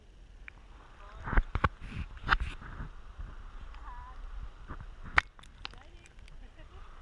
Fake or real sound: real